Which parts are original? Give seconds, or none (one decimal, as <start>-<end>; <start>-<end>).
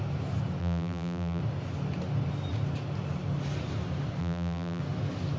0.0-0.6; 1.4-4.2; 4.8-5.4